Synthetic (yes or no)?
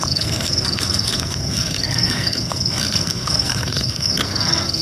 yes